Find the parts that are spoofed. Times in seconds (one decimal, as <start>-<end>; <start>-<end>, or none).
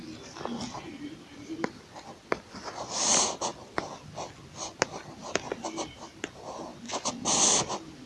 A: none